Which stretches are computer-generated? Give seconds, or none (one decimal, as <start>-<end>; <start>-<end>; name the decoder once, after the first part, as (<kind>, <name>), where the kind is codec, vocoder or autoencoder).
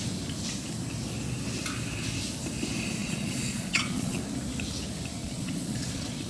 3.0-4.2 (vocoder, Vocos); 5.2-6.3